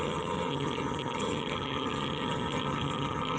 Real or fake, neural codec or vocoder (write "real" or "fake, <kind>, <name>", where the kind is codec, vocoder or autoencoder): fake, vocoder, HiFi-GAN